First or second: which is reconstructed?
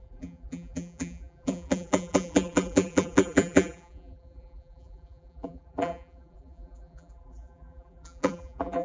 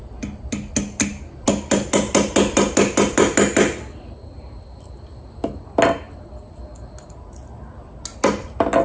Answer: first